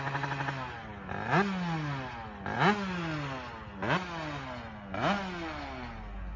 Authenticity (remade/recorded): recorded